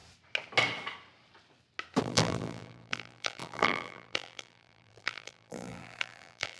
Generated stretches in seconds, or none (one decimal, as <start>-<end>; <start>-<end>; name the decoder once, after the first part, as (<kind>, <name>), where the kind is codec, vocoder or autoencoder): 2.0-6.6 (vocoder, BigVGAN v2)